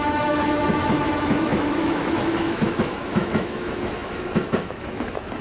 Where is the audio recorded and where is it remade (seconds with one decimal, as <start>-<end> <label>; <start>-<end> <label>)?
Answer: 0.0-5.4 remade